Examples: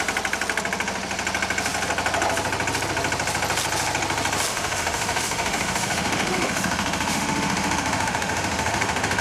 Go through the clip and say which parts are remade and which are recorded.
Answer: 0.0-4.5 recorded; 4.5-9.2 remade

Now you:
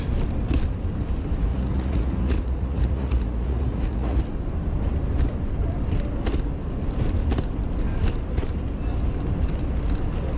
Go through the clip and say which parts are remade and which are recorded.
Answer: 0.0-1.5 recorded; 1.5-4.2 remade; 4.2-10.4 recorded